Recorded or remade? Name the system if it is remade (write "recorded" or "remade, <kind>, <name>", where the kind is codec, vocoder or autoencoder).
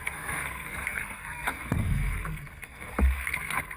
remade, codec, SNAC